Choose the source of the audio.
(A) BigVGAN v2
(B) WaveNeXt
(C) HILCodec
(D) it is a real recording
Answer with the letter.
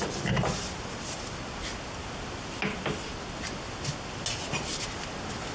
D